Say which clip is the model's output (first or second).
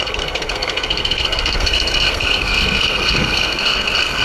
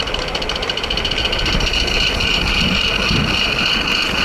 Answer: first